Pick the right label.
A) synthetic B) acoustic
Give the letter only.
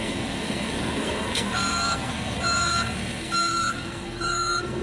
A